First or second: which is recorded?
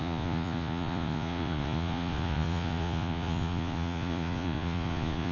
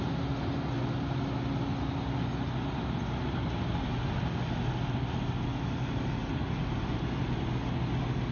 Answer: second